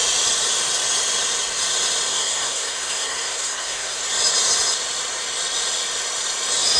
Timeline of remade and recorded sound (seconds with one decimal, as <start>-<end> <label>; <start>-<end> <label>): 0.0-2.1 recorded; 2.1-4.0 remade; 4.0-6.8 recorded